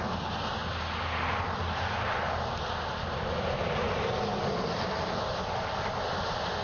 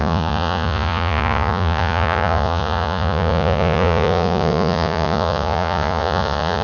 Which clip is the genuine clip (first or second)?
first